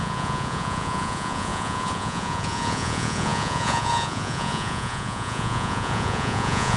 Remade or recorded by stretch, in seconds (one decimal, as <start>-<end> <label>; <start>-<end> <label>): 0.0-6.8 remade